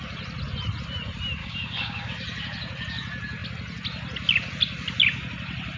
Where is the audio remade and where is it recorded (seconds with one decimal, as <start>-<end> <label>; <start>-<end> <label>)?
0.0-1.4 recorded; 1.4-2.1 remade; 2.1-5.8 recorded